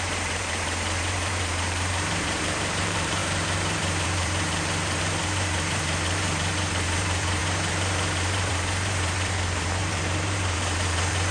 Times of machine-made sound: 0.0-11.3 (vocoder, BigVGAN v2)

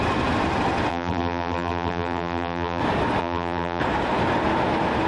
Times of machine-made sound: 0.9-2.8 (vocoder, BigVGAN v2); 3.2-3.8

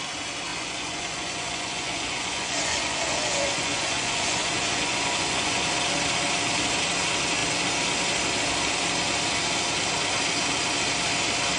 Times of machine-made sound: 0.5-5.7 (vocoder, Vocos)

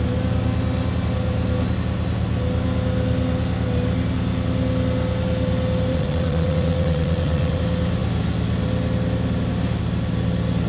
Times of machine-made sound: 5.9-7.6 (vocoder, WaveNeXt)

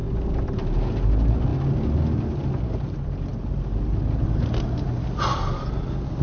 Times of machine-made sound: none

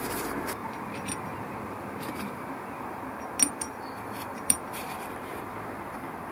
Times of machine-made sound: 0.0-0.6 (vocoder, BigVGAN v2); 3.5-6.3

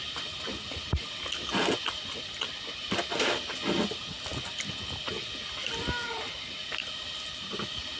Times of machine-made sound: none